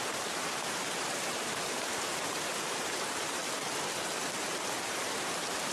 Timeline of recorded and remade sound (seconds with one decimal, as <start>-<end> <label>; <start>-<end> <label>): 0.0-3.4 remade; 3.4-4.4 recorded; 4.4-5.7 remade